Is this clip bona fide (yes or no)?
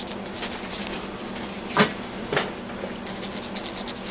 yes